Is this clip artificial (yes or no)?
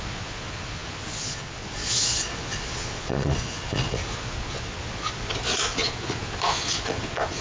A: yes